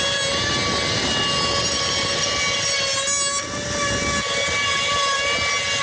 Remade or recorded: recorded